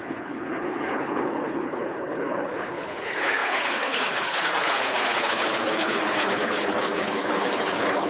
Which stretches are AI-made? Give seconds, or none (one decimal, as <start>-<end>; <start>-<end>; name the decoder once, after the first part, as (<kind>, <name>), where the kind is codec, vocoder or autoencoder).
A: 0.0-8.1 (codec, HILCodec)